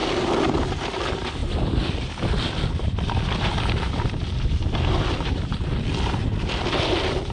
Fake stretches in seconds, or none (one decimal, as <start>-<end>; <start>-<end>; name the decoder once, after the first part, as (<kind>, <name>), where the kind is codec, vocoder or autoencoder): 1.4-5.8 (vocoder, BigVGAN v2)